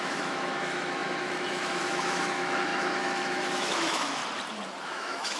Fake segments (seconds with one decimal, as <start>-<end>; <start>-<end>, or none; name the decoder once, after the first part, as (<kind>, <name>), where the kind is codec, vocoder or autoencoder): 0.0-4.2 (autoencoder, DAC-VAE); 4.8-5.4